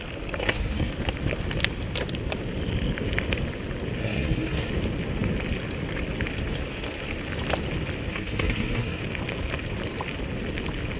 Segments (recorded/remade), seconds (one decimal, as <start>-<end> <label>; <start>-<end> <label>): 0.0-0.4 recorded; 0.4-0.9 remade; 0.9-4.0 recorded; 4.0-4.7 remade; 4.7-8.1 recorded; 8.1-9.0 remade; 9.0-11.0 recorded